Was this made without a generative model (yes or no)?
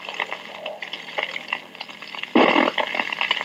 yes